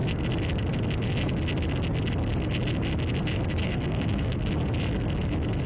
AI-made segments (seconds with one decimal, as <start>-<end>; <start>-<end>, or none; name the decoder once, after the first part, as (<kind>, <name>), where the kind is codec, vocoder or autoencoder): 3.6-4.5 (codec, SNAC)